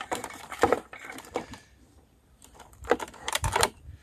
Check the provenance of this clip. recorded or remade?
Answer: remade